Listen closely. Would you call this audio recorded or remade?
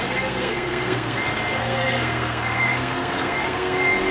remade